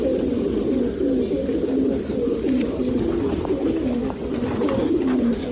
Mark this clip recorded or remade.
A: recorded